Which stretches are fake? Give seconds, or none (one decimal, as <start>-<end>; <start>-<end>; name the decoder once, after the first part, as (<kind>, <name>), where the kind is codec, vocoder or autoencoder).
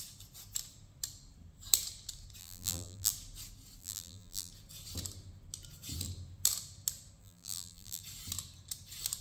2.4-3.1 (vocoder, BigVGAN v2); 3.8-4.5; 7.2-8.0